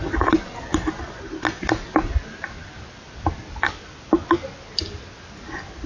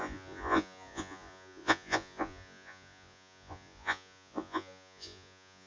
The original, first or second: first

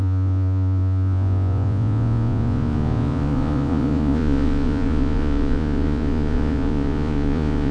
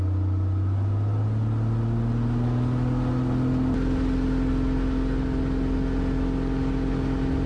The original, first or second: second